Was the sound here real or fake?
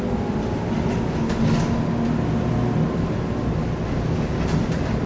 real